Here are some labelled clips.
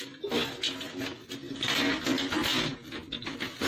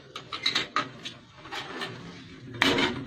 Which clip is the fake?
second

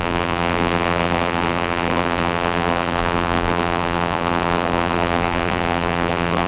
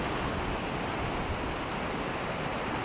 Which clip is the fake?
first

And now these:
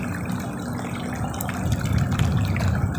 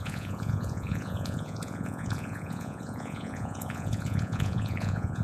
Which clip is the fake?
second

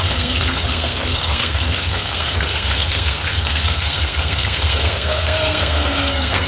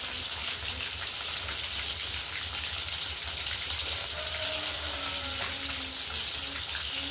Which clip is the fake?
first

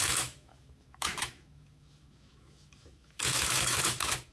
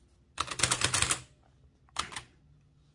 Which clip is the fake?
first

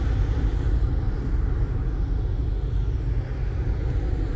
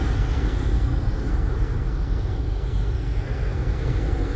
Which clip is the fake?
second